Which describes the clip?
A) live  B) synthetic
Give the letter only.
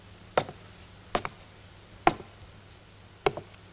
A